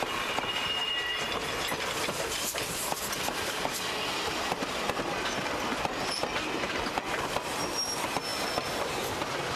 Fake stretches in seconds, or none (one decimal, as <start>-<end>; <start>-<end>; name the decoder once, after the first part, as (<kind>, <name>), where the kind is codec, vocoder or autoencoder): none